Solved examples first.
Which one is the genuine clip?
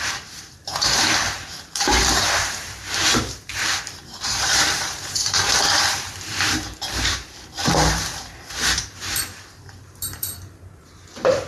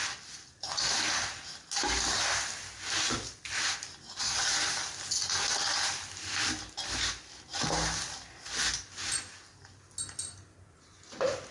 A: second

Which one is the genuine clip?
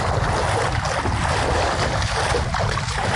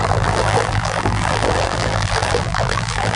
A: first